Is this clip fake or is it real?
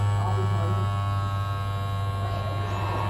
real